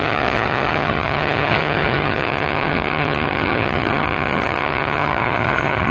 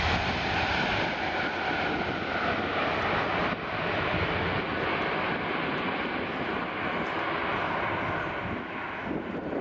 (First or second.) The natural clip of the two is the second